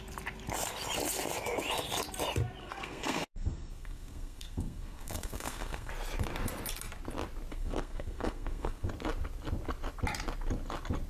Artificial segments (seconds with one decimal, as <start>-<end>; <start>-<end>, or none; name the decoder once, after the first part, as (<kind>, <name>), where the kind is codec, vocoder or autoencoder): 2.6-5.9 (codec, SNAC); 7.5-8.9